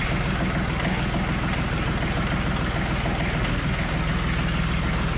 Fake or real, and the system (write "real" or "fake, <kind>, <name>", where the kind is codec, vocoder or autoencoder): real